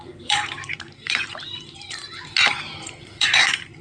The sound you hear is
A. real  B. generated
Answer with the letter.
B